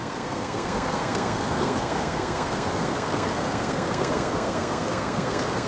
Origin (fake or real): fake